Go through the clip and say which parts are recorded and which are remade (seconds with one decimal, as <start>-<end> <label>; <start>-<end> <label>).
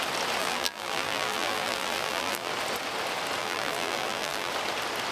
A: 0.0-0.4 recorded; 0.4-2.5 remade; 2.5-3.4 recorded; 3.4-4.5 remade; 4.5-5.1 recorded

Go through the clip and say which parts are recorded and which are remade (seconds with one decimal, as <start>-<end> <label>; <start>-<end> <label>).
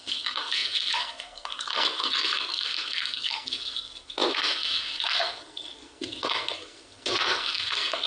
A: 0.0-8.1 remade